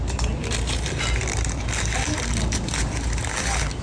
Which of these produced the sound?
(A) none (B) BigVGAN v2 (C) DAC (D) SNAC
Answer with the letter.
A